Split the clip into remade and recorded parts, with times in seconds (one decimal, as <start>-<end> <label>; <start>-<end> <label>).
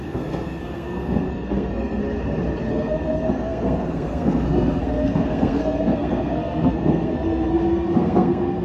0.0-2.0 remade; 2.0-2.7 recorded; 2.7-8.6 remade